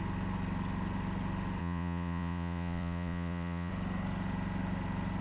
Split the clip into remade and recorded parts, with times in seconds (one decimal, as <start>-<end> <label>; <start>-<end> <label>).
0.0-1.6 recorded; 1.6-3.7 remade; 3.7-5.2 recorded